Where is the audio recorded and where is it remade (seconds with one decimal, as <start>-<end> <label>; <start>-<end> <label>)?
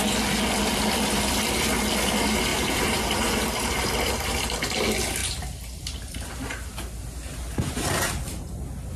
0.0-2.5 recorded; 2.5-4.1 remade; 4.1-9.0 recorded